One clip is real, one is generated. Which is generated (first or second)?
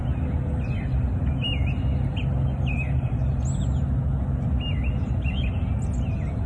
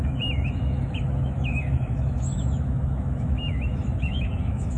second